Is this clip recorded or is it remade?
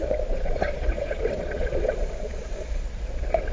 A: remade